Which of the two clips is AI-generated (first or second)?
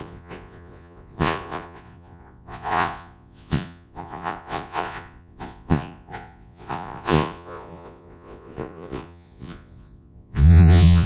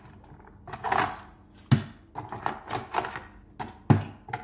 first